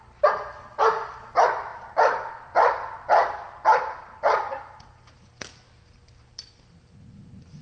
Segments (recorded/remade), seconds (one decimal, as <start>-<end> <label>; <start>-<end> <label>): 0.0-7.6 recorded